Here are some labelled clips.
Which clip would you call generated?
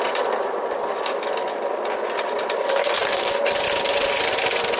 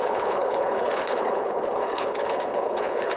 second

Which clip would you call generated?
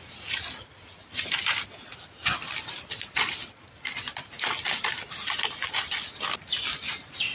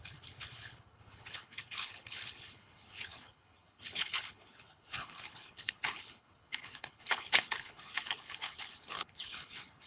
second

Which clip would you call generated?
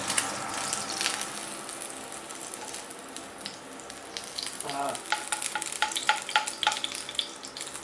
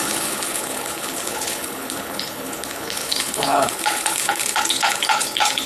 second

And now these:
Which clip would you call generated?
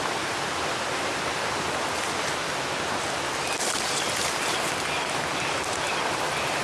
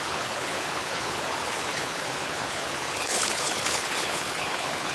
second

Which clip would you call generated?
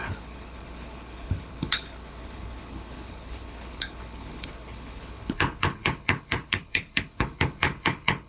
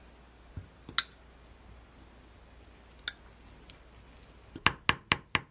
first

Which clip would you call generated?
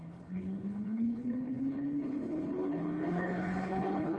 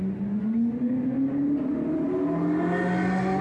first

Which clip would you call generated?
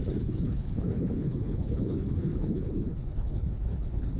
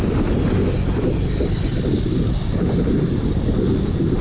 first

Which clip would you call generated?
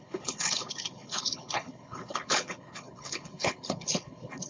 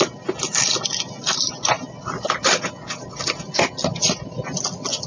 first